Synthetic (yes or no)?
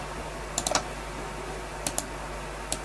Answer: no